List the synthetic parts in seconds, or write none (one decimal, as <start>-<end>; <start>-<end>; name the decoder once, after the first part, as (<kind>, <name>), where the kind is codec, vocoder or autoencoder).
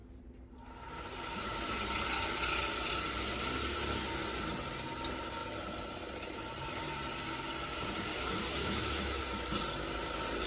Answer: 8.6-9.2 (autoencoder, DAC-VAE)